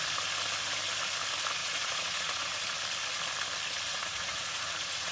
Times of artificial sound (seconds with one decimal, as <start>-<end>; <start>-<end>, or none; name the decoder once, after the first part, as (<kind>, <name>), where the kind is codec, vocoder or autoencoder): 1.6-2.6 (vocoder, Vocos); 3.9-5.1

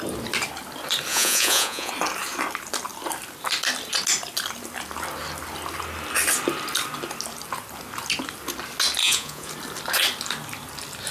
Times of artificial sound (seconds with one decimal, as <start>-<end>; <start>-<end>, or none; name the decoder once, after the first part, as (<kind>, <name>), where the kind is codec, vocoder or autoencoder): 1.1-1.9 (vocoder, Vocos); 9.0-9.5